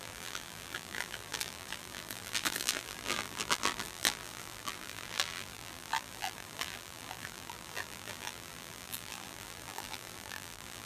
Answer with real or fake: fake